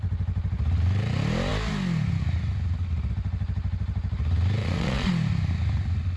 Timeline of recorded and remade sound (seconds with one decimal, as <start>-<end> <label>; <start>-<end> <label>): 0.0-4.6 recorded; 4.6-5.1 remade; 5.1-6.2 recorded